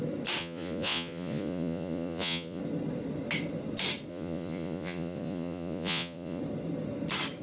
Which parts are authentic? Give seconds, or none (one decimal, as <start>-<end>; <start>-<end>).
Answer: 0.0-0.4; 2.6-4.1; 6.4-7.4